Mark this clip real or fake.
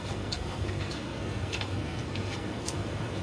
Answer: fake